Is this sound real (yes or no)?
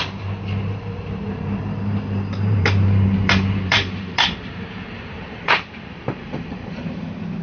no